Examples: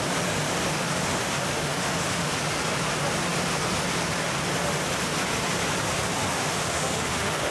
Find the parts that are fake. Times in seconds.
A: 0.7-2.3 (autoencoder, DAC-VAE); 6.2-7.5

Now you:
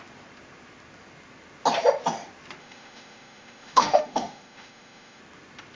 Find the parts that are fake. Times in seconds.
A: 2.6-5.2 (autoencoder, DAC-VAE)

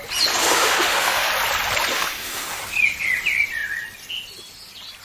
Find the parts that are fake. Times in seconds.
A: 0.4-1.3 (autoencoder, DAC-VAE); 1.9-2.6

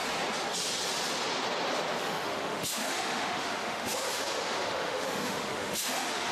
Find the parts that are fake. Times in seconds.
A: 2.0-6.3 (autoencoder, DAC-VAE)

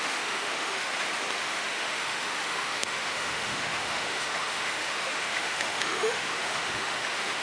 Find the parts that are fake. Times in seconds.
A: 0.0-0.9 (autoencoder, DAC-VAE); 1.4-7.4

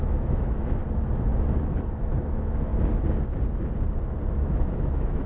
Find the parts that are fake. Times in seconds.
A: 0.0-0.8 (autoencoder, DAC-VAE); 1.9-2.7; 4.3-5.3

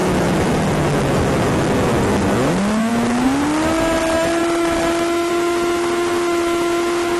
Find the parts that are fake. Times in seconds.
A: 0.0-2.5 (autoencoder, DAC-VAE)

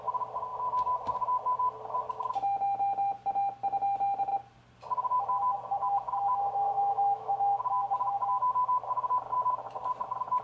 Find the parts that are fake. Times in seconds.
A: 6.7-7.6 (autoencoder, DAC-VAE)